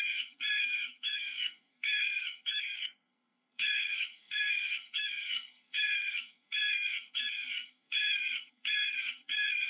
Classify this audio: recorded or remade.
remade